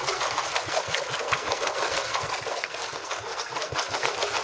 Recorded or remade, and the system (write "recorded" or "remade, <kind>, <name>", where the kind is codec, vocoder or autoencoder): remade, codec, SNAC